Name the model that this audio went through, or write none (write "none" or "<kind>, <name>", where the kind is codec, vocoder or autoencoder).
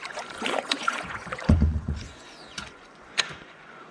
vocoder, Vocos